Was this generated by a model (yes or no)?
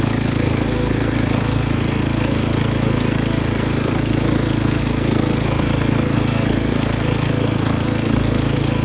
yes